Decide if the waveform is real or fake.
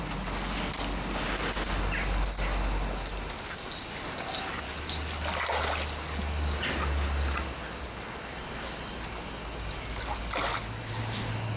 real